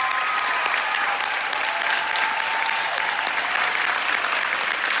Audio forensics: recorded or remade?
recorded